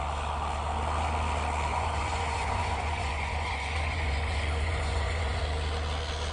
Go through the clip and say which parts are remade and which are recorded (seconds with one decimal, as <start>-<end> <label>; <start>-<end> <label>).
0.0-1.7 recorded; 1.7-5.4 remade; 5.4-6.3 recorded